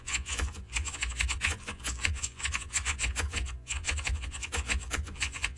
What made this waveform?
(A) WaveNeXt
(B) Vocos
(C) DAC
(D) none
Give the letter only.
B